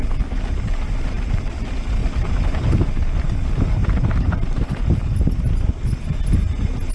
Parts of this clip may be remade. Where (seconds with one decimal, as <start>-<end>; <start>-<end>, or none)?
0.7-1.5